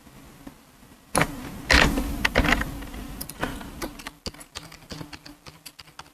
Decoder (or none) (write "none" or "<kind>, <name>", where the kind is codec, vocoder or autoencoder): none